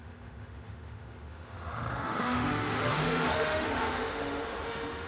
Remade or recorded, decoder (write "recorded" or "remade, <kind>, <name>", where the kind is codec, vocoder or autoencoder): remade, autoencoder, DAC-VAE